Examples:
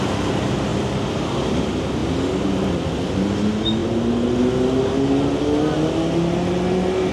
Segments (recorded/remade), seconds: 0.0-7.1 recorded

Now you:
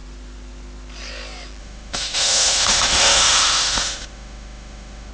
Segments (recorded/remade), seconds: 0.0-1.6 recorded; 1.6-5.1 remade

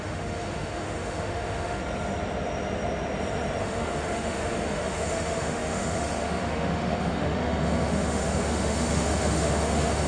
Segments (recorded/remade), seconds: 0.0-1.8 remade; 1.8-3.6 recorded; 3.6-10.1 remade

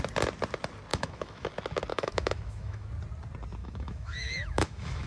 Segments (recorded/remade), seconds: 0.0-0.9 recorded; 0.9-1.5 remade; 1.5-1.9 recorded; 1.9-2.9 remade; 2.9-3.6 recorded; 3.6-5.1 remade

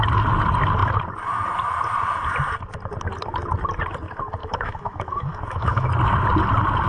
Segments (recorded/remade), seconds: 0.0-4.4 recorded; 4.4-5.9 remade; 5.9-6.9 recorded

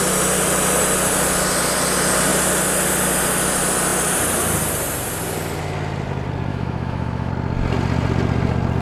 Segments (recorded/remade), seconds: 0.0-6.5 recorded; 6.5-7.3 remade; 7.3-8.8 recorded

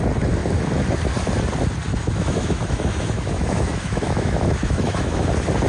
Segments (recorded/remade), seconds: 0.0-1.9 recorded; 1.9-5.3 remade; 5.3-5.7 recorded

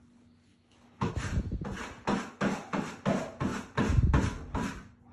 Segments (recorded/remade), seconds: 0.0-0.5 recorded; 0.5-1.1 remade; 1.1-5.1 recorded